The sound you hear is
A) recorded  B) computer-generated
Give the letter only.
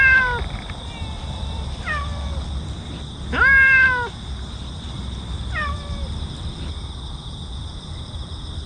A